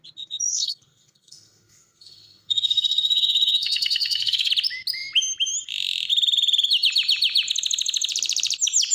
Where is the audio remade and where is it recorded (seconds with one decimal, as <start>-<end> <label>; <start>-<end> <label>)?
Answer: 0.0-0.5 recorded; 0.5-4.5 remade; 4.5-8.9 recorded